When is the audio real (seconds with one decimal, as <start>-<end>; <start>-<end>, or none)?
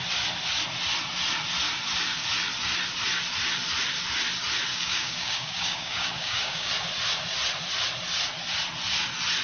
0.0-4.7; 6.7-9.4